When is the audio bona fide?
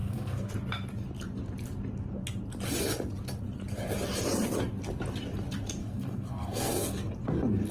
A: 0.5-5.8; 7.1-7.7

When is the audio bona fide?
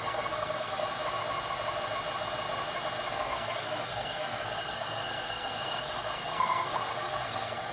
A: 0.8-3.1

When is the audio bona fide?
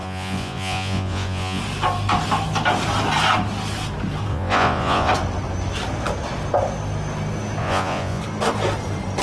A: 1.6-4.3; 5.1-7.6; 8.2-9.2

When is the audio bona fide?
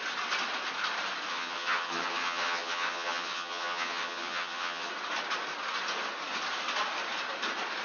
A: 0.0-1.3; 4.9-7.8